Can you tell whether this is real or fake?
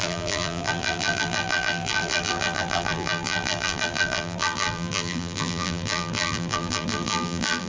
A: fake